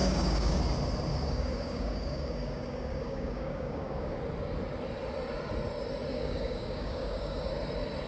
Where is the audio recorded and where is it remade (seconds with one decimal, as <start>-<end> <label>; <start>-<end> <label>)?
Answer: 0.0-0.6 remade; 0.6-1.1 recorded; 1.1-4.2 remade; 4.2-6.1 recorded; 6.1-7.5 remade; 7.5-8.1 recorded